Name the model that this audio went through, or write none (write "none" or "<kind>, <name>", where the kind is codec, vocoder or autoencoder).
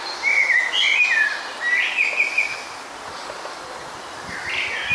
none